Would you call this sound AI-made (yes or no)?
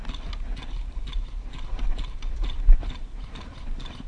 no